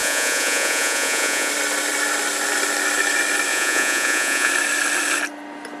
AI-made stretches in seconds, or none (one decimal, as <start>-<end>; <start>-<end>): 0.0-1.5; 3.5-4.5